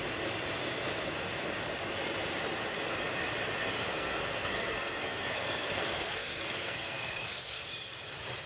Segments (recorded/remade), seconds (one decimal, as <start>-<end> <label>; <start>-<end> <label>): 0.0-3.9 recorded; 3.9-7.7 remade; 7.7-8.5 recorded